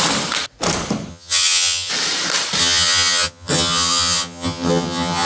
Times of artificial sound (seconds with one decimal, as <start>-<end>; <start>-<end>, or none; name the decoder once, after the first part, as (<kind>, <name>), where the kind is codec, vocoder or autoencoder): 1.1-1.9 (vocoder, HiFi-GAN); 2.6-5.3